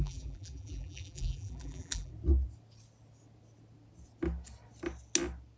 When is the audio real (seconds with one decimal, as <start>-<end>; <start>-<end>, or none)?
2.1-5.6